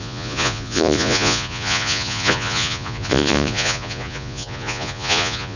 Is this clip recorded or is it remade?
remade